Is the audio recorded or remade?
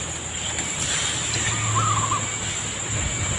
recorded